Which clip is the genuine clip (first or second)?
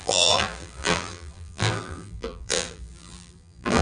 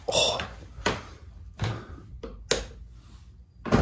second